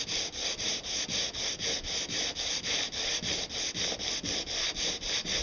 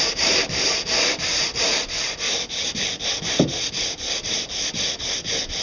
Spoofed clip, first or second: second